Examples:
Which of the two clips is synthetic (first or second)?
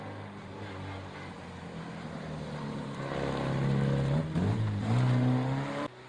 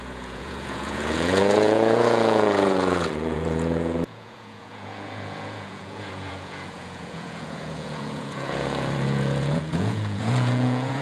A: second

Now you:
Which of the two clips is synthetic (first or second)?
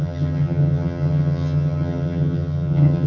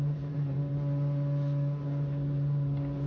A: first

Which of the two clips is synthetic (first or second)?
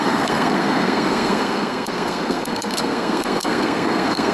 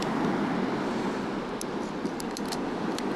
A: first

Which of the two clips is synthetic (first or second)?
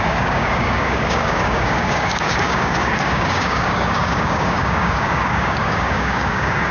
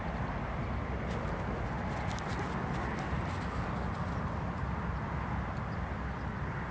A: first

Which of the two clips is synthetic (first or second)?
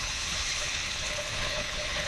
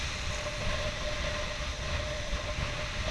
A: first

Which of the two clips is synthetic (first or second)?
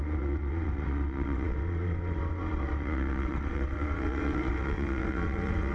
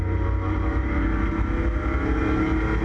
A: first